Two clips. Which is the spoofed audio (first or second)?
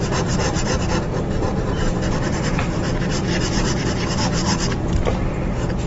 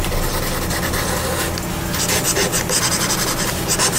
first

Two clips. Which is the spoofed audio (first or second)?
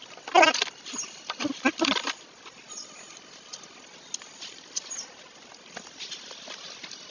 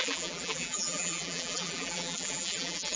second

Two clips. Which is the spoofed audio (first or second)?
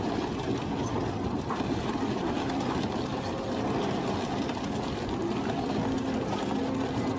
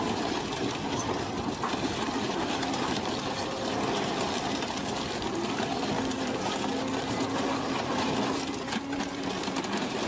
second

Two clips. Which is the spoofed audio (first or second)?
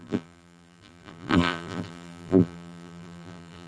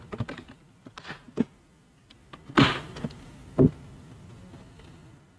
first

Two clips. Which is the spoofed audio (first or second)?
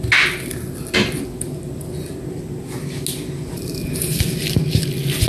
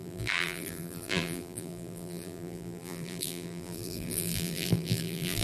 second